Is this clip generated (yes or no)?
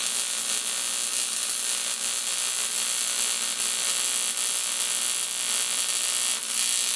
no